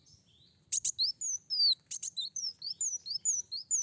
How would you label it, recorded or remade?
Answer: recorded